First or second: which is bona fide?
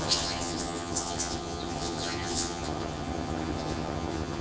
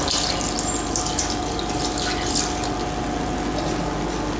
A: second